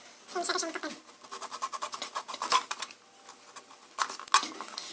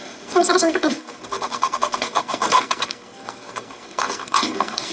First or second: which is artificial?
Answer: second